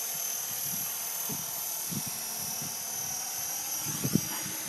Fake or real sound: real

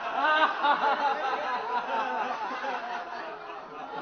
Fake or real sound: real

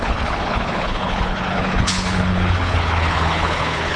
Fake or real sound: fake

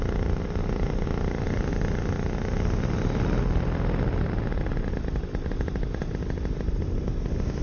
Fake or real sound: real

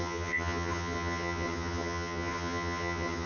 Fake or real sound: fake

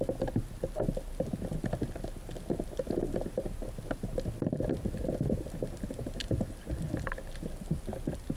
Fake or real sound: real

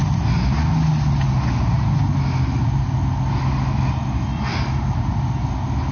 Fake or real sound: real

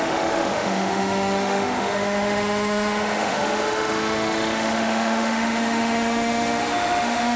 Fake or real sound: fake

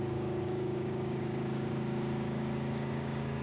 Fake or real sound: fake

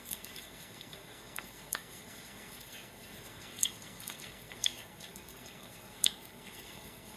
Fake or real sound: fake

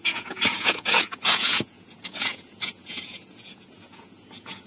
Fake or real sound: fake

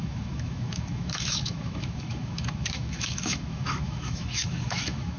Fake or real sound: fake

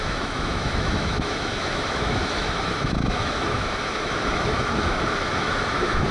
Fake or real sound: fake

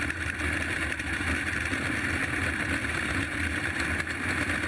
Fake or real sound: real